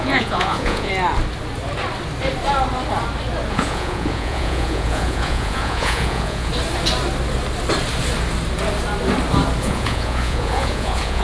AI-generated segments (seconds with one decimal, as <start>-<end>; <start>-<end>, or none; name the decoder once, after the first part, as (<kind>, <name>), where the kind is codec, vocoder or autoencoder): 0.0-0.9 (vocoder, Vocos); 3.5-6.5; 9.6-11.2